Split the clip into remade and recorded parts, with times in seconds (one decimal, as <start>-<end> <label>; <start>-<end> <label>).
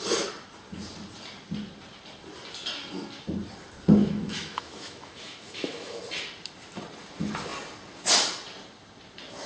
0.0-4.0 recorded; 4.0-6.0 remade; 6.0-9.5 recorded